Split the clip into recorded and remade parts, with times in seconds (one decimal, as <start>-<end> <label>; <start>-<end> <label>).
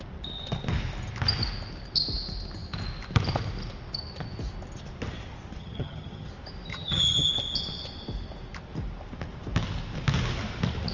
0.0-5.6 recorded; 5.6-6.3 remade; 6.3-6.7 recorded; 6.7-7.3 remade; 7.3-10.9 recorded